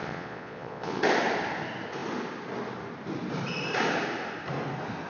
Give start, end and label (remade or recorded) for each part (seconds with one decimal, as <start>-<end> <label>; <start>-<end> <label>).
0.0-1.0 remade; 1.0-5.1 recorded